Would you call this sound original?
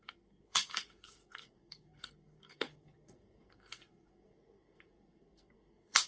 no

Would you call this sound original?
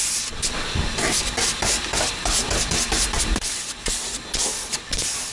yes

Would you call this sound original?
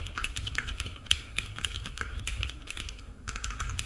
no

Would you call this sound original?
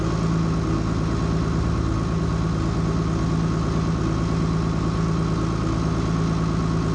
yes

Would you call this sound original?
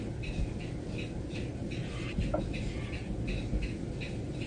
yes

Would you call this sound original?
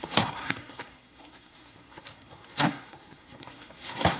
no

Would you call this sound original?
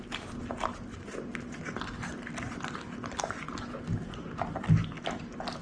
yes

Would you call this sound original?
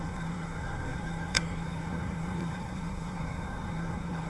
no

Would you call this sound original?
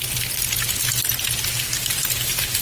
yes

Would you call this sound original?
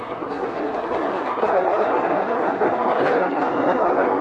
no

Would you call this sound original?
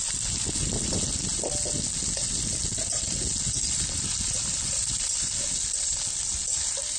yes